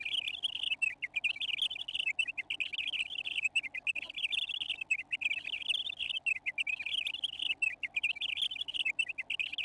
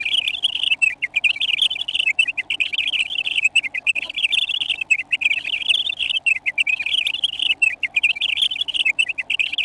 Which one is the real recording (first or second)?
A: first